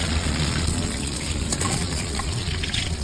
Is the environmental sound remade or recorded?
remade